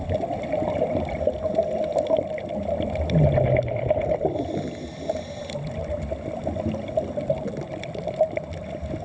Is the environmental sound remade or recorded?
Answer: recorded